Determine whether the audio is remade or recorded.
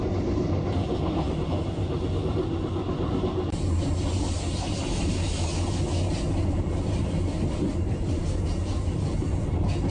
recorded